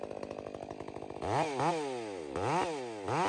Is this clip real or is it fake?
real